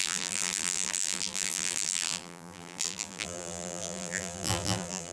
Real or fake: fake